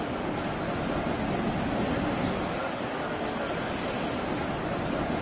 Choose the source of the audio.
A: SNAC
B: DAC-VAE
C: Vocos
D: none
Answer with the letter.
D